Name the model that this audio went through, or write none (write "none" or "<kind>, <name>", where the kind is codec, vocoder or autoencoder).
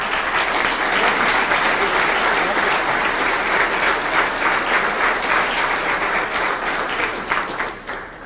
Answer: vocoder, BigVGAN v2